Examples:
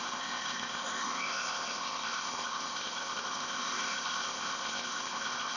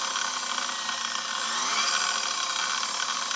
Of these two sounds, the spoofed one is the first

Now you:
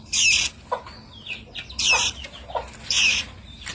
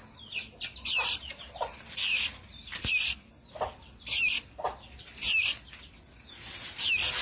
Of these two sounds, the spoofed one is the second